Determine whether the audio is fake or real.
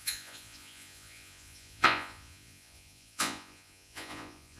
fake